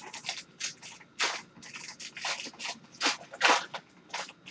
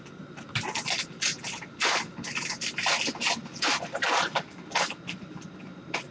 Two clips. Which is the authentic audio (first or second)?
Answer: first